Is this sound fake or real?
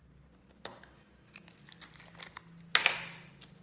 real